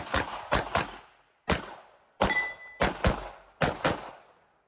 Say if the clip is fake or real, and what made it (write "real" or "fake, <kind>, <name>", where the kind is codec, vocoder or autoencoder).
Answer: real